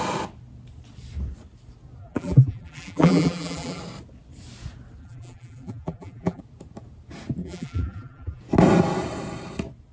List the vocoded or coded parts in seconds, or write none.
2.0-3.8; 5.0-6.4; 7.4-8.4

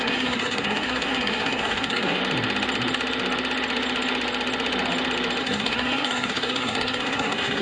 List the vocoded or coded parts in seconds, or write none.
0.0-2.2; 5.4-7.6

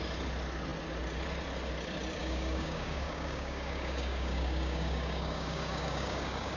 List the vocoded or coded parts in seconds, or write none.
2.2-6.6

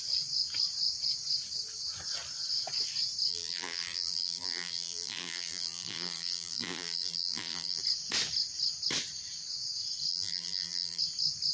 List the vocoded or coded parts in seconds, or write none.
3.3-7.8; 10.1-11.0

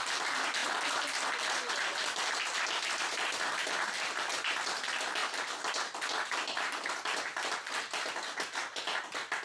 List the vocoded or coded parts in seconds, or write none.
none

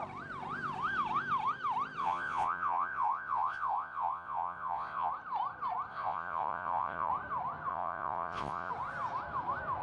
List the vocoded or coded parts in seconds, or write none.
2.0-5.1; 5.9-7.1; 7.7-8.7

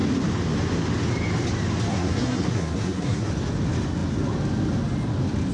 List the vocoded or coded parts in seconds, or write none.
1.9-3.3